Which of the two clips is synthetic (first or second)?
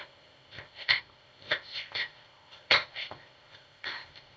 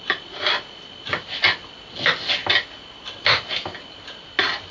first